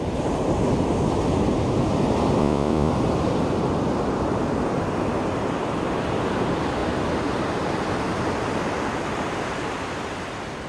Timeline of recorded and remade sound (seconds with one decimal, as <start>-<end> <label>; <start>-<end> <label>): 0.0-2.4 recorded; 2.4-2.9 remade; 2.9-10.7 recorded